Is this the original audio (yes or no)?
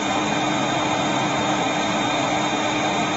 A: yes